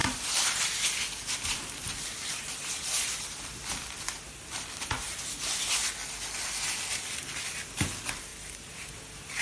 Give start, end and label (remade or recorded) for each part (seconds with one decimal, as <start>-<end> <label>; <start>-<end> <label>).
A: 0.0-4.9 remade; 4.9-8.3 recorded; 8.3-9.0 remade; 9.0-9.4 recorded